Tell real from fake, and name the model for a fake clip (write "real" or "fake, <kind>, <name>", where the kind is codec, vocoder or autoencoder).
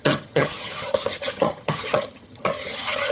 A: fake, vocoder, HiFi-GAN